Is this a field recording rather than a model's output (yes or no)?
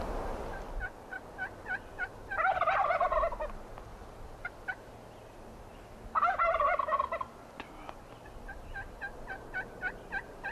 yes